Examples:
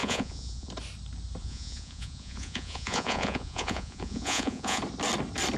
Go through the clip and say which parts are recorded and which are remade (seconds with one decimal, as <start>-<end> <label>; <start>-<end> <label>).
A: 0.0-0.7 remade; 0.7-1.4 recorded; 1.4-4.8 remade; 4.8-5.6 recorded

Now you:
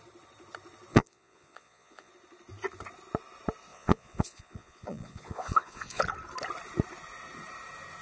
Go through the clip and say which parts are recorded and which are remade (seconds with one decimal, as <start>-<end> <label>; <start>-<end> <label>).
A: 0.0-0.9 recorded; 0.9-2.1 remade; 2.1-3.7 recorded; 3.7-6.0 remade; 6.0-8.0 recorded

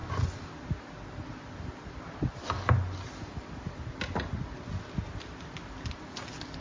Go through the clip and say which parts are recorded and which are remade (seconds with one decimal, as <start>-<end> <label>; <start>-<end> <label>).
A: 0.0-6.6 recorded

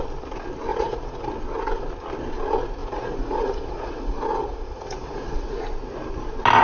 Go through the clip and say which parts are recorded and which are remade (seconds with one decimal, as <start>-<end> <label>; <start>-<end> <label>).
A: 0.0-0.7 recorded; 0.7-1.3 remade; 1.3-2.8 recorded; 2.8-5.6 remade; 5.6-6.6 recorded

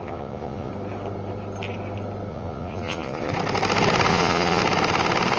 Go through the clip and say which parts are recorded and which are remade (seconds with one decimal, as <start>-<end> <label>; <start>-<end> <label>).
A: 0.0-0.7 remade; 0.7-2.3 recorded; 2.3-3.3 remade; 3.3-4.1 recorded; 4.1-4.6 remade; 4.6-5.4 recorded

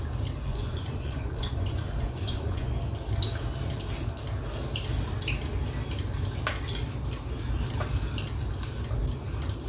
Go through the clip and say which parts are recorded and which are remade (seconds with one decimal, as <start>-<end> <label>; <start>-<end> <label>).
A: 0.0-0.5 recorded; 0.5-2.7 remade; 2.7-9.7 recorded

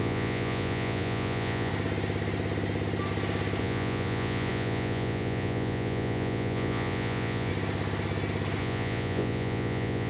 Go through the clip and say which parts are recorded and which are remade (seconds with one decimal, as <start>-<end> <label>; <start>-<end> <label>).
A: 0.0-1.7 remade; 1.7-3.6 recorded; 3.6-7.5 remade; 7.5-8.6 recorded; 8.6-10.1 remade